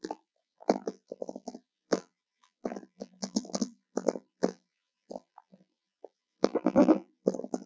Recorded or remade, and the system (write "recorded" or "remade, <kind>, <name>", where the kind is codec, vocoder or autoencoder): remade, vocoder, BigVGAN v2